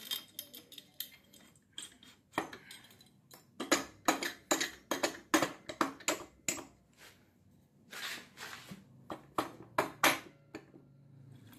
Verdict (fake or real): real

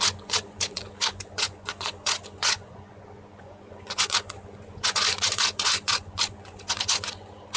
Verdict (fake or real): fake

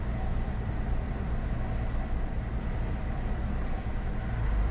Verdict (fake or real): fake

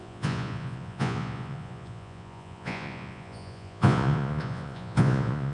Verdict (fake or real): fake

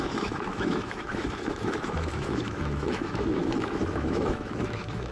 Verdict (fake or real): fake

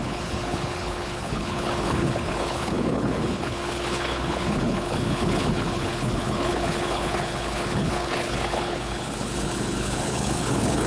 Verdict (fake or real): fake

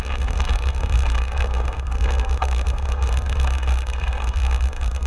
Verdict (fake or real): fake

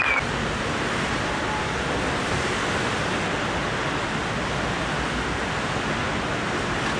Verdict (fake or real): real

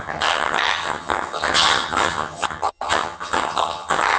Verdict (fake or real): fake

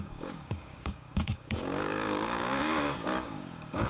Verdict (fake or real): fake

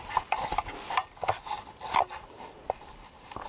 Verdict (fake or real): real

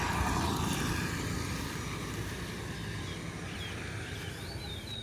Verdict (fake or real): real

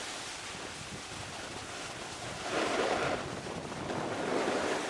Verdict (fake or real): real